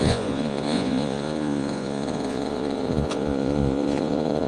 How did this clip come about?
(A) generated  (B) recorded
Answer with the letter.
A